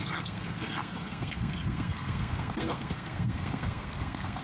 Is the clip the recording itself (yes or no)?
no